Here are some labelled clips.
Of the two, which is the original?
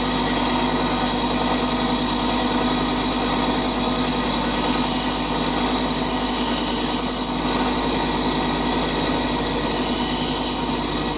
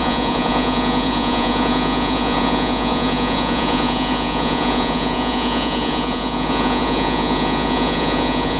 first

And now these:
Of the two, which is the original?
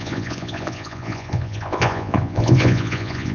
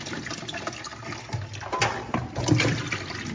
second